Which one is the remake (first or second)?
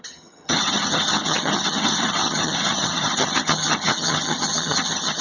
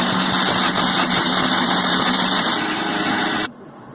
first